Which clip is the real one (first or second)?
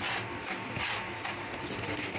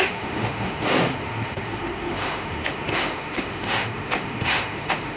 first